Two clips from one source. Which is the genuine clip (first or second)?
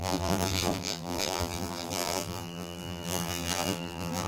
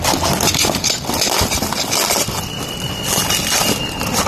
second